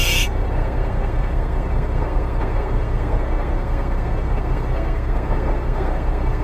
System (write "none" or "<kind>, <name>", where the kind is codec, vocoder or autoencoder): codec, SNAC